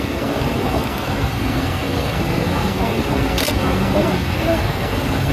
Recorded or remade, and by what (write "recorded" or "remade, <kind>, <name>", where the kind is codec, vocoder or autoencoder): remade, codec, SNAC